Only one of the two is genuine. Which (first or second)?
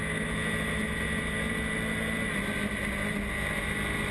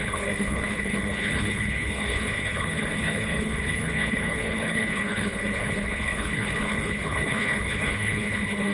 first